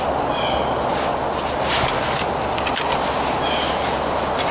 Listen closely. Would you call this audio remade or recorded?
recorded